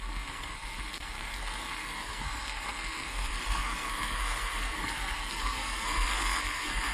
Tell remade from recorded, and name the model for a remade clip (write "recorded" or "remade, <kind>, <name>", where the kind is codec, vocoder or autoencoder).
remade, codec, SNAC